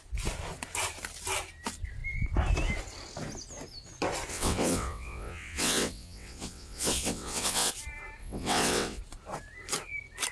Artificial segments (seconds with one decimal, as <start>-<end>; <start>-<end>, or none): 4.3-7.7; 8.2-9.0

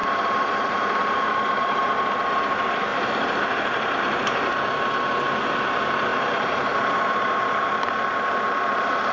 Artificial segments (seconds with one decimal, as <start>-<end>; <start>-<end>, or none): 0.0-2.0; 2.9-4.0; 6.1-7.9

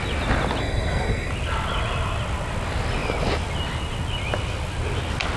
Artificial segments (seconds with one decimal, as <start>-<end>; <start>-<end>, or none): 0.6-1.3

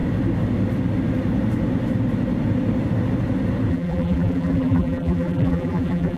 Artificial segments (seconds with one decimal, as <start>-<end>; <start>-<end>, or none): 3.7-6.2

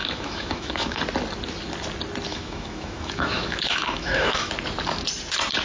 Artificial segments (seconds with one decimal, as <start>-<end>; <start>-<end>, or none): 0.0-1.0; 2.3-4.5

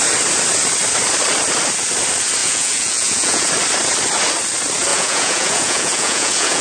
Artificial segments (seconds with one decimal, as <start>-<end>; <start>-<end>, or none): 2.4-3.5; 4.9-6.6